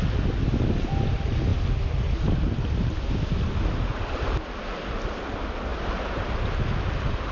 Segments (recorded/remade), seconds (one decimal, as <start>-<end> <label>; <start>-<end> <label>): 0.0-1.5 recorded; 1.5-3.5 remade; 3.5-7.3 recorded